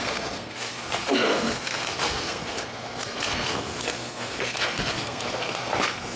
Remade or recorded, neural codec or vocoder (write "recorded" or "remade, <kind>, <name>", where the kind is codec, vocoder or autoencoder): remade, codec, SNAC